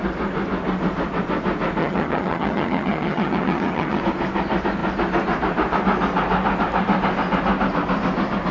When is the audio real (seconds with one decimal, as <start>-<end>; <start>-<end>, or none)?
0.0-1.8; 4.0-8.5